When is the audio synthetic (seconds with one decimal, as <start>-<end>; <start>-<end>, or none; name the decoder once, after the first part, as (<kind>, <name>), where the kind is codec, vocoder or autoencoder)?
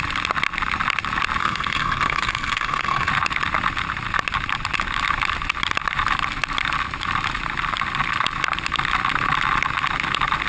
1.4-3.1 (codec, SNAC)